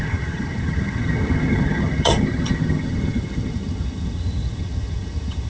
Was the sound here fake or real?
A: fake